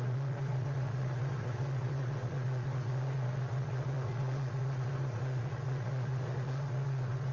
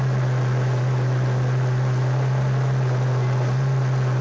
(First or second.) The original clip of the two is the second